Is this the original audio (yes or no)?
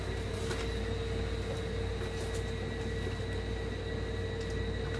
yes